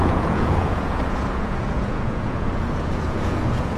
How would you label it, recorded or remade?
remade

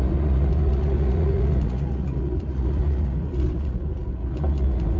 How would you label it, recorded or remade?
remade